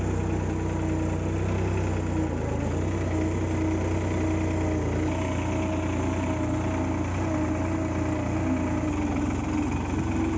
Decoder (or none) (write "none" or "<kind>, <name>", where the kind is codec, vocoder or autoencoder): none